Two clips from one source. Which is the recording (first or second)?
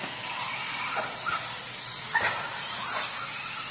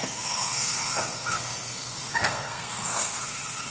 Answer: first